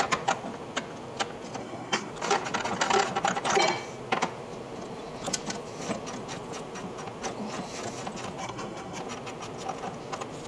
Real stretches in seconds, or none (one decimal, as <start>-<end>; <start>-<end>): 0.0-1.6; 2.1-8.4; 9.0-10.5